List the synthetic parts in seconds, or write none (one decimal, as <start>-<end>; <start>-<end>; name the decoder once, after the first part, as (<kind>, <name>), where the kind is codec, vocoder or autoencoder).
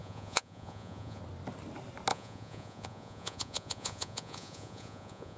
0.0-1.2 (vocoder, Vocos); 2.1-5.4